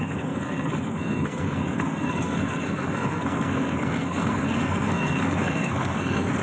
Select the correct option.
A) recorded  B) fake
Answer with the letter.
B